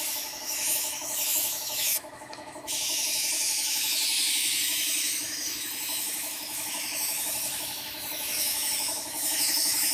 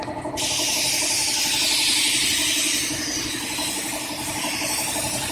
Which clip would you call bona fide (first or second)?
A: second